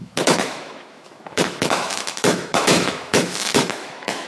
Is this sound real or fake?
fake